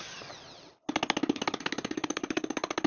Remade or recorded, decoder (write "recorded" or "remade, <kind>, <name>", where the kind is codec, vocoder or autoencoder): recorded